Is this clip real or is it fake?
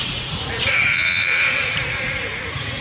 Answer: fake